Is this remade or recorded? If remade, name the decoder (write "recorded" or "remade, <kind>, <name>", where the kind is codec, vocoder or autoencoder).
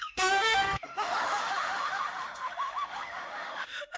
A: remade, autoencoder, DAC-VAE